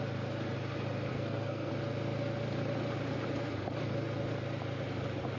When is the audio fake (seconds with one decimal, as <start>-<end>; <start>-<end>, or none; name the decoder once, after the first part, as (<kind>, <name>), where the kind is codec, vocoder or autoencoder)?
1.1-1.7 (codec, SNAC)